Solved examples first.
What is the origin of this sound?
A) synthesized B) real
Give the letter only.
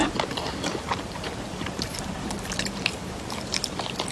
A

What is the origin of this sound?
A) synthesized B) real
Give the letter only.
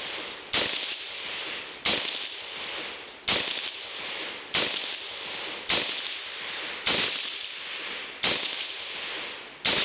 B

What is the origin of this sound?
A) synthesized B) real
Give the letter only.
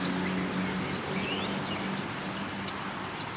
B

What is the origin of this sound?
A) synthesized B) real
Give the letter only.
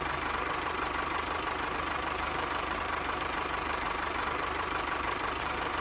A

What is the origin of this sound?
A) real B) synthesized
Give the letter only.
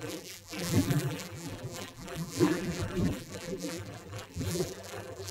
B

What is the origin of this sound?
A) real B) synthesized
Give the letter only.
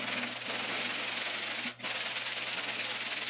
A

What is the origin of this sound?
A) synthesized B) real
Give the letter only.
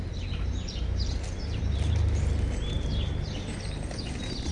A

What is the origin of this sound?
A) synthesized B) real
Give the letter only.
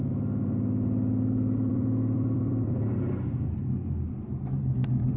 A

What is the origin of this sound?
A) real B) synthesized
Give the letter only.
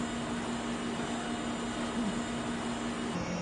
A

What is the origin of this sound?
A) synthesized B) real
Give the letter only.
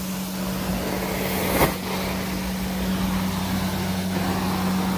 B